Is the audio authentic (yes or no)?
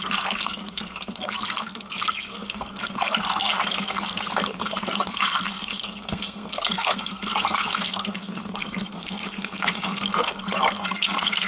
no